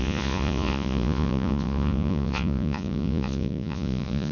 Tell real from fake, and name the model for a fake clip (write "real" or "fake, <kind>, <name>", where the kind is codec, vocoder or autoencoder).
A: fake, vocoder, Vocos